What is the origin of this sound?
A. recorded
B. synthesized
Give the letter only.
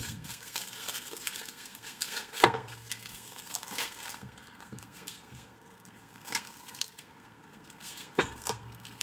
B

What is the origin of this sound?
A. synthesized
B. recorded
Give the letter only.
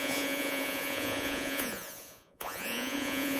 A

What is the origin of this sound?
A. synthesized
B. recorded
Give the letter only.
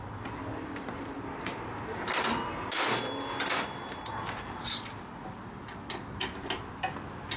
B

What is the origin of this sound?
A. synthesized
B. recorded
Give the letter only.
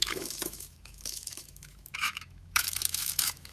A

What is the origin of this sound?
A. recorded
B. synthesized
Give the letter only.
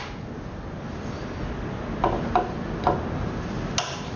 A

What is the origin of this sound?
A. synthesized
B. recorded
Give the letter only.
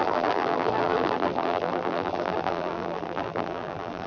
A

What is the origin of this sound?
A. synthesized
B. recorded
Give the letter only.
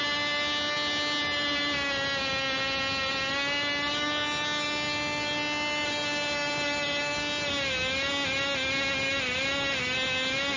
B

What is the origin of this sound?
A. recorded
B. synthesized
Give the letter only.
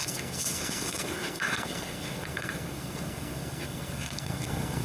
B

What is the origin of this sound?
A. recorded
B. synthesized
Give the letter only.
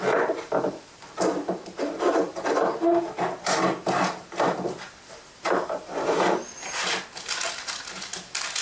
A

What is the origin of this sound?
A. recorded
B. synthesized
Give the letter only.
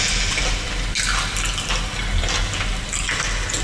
A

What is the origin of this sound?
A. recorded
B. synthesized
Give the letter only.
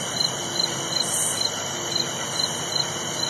A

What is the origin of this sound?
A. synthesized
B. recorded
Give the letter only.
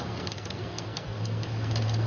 A